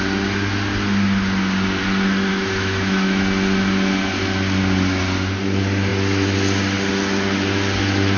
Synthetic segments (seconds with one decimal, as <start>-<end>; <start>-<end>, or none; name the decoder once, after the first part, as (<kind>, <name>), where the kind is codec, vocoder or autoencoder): 2.3-3.2 (autoencoder, DAC-VAE)